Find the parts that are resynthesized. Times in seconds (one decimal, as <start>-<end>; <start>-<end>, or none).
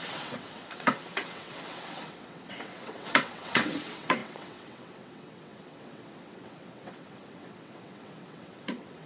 0.0-9.1